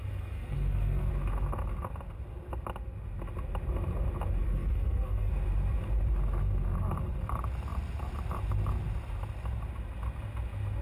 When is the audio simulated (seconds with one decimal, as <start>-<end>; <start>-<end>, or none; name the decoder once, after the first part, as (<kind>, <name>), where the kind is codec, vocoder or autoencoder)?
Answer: 0.0-1.1 (codec, SNAC); 4.4-5.3